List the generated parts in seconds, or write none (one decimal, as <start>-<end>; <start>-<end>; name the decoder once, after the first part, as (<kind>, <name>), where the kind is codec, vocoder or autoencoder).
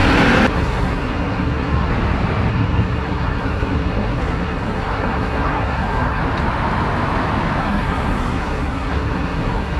0.5-1.9 (codec, SNAC); 2.5-6.2; 7.6-9.8